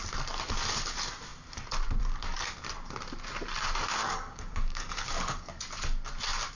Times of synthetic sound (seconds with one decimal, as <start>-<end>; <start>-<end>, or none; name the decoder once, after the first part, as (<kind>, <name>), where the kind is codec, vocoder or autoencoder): 4.0-5.6 (codec, DAC)